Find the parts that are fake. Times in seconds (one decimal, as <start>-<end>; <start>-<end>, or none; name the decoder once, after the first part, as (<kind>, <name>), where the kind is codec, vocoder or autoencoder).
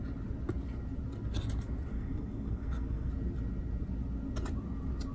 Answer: 1.9-3.1 (codec, SNAC)